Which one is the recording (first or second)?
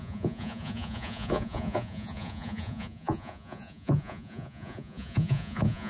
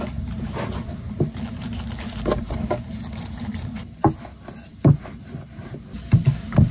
second